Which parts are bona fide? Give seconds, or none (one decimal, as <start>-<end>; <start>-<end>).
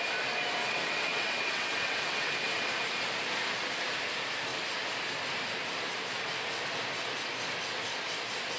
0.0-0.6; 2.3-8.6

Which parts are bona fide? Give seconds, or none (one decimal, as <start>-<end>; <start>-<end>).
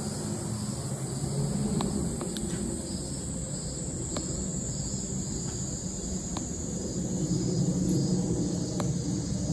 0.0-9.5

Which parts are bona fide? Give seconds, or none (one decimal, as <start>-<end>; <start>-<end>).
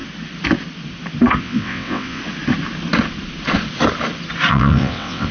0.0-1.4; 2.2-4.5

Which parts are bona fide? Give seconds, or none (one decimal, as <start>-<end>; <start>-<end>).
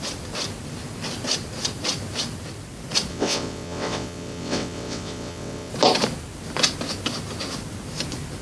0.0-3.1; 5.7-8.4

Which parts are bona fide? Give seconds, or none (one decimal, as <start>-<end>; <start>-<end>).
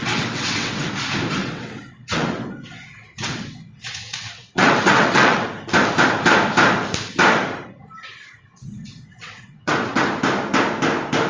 0.9-1.4; 5.5-8.1; 10.1-11.3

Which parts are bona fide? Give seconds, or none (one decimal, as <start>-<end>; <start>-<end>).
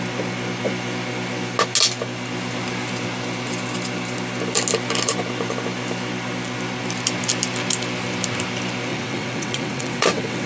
0.0-8.9